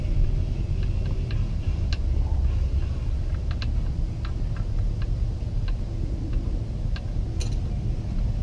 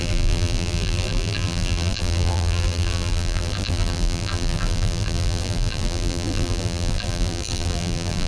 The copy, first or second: second